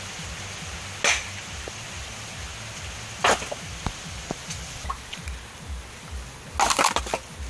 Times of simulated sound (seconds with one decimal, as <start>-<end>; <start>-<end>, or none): none